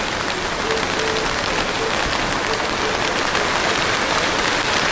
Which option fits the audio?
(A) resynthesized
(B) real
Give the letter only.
B